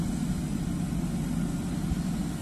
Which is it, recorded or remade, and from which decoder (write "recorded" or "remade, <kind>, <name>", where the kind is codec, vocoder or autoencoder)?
recorded